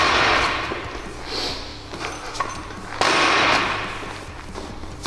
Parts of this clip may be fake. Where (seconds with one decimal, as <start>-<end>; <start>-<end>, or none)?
none